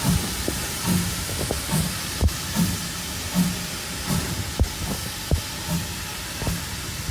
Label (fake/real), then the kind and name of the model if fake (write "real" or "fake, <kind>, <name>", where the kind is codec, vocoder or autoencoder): real